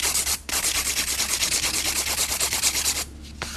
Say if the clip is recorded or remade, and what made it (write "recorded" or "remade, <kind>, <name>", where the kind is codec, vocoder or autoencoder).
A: recorded